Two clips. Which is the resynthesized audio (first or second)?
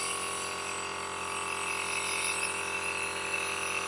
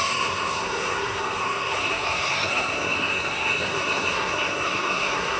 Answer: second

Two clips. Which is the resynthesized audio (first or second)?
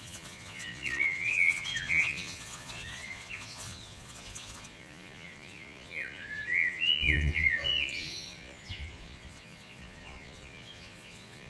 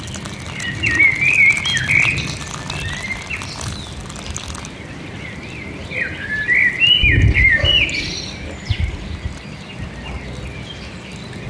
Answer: first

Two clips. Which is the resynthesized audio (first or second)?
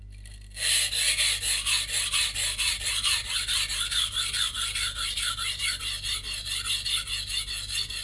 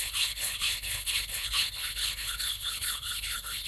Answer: second